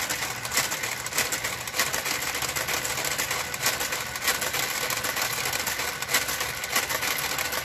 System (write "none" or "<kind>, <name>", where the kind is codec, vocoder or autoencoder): none